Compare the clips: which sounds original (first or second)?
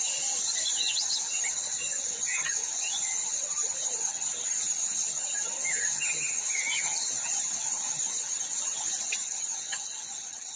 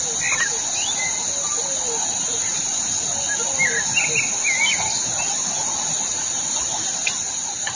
second